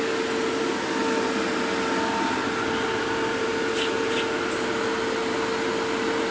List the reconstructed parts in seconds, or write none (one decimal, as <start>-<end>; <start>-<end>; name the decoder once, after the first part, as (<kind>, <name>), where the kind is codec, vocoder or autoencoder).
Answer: none